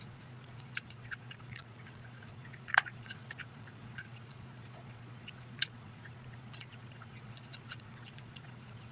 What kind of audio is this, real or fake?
fake